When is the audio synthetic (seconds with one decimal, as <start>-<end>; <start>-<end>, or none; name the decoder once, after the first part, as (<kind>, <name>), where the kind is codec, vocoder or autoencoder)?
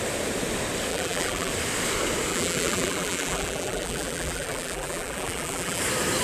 0.9-1.5 (vocoder, BigVGAN v2); 2.3-5.8